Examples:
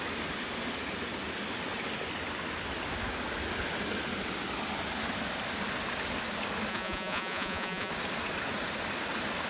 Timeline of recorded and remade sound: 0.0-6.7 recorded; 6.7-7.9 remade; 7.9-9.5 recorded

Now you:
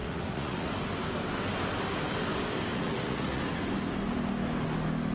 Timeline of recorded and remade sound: 0.0-0.7 remade; 0.7-2.7 recorded; 2.7-3.6 remade; 3.6-5.1 recorded

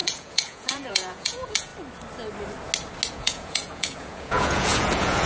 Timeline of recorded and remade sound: 0.0-1.7 remade; 1.7-3.1 recorded; 3.1-5.3 remade

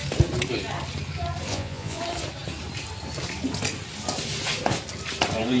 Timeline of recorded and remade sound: 0.0-1.5 recorded; 1.5-2.0 remade; 2.0-5.6 recorded

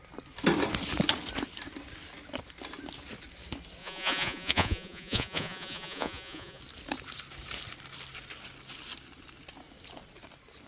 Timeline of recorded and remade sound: 0.0-3.8 recorded; 3.8-6.6 remade; 6.6-10.7 recorded

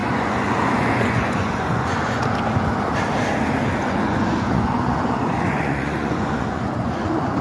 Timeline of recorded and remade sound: 0.0-2.2 remade; 2.2-3.8 recorded; 3.8-7.4 remade

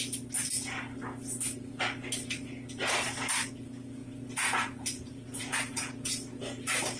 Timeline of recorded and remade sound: 0.0-4.0 recorded; 4.0-5.9 remade; 5.9-7.0 recorded